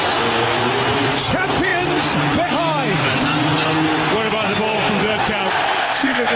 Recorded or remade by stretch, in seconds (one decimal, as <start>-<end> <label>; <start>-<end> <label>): 0.0-5.8 recorded; 5.8-6.4 remade

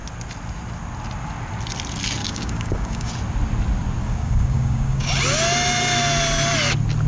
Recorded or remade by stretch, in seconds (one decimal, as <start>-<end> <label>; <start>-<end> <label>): 0.0-2.2 recorded; 2.2-3.1 remade; 3.1-4.0 recorded; 4.0-5.1 remade; 5.1-7.1 recorded

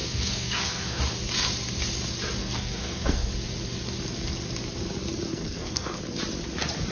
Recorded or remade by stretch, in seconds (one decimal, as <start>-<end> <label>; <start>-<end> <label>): 0.0-1.0 remade; 1.0-2.4 recorded; 2.4-3.3 remade; 3.3-5.3 recorded; 5.3-6.0 remade; 6.0-6.9 recorded

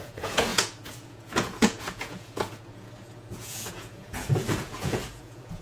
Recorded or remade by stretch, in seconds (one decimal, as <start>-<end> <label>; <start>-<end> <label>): 0.0-5.6 remade

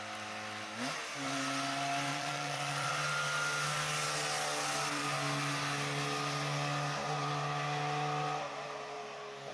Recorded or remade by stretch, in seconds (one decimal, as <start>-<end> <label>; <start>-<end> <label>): 0.0-2.1 recorded; 2.1-2.9 remade; 2.9-9.5 recorded

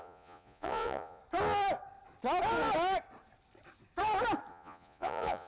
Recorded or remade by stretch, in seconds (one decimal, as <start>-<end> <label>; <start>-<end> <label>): 0.0-1.2 remade; 1.2-4.5 recorded; 4.5-5.5 remade

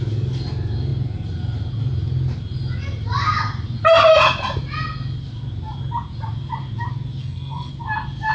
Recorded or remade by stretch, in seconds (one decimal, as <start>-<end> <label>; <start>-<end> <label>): 0.0-7.2 recorded; 7.2-7.7 remade; 7.7-8.3 recorded